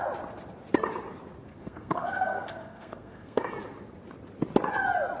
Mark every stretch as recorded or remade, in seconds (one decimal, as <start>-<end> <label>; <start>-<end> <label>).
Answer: 0.0-1.5 recorded; 1.5-3.5 remade; 3.5-5.2 recorded

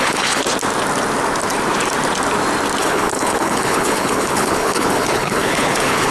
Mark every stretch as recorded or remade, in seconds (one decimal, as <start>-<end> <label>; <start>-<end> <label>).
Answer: 0.0-0.4 remade; 0.4-2.8 recorded; 2.8-6.1 remade

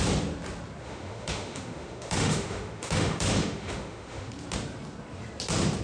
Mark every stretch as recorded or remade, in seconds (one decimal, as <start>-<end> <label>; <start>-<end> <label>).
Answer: 0.0-0.8 recorded; 0.8-4.3 remade; 4.3-5.8 recorded

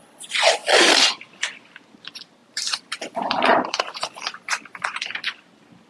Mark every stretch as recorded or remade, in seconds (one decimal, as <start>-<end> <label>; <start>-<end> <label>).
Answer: 0.0-0.6 recorded; 0.6-1.3 remade; 1.3-2.4 recorded; 2.4-3.8 remade; 3.8-5.9 recorded